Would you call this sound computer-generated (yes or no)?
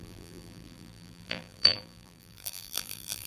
yes